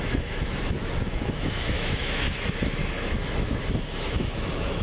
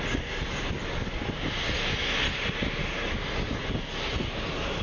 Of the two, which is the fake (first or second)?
first